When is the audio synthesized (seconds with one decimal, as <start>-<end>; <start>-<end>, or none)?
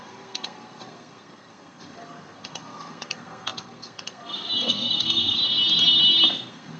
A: 0.0-5.4; 6.3-6.8